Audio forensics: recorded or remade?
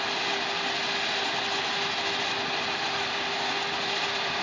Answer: recorded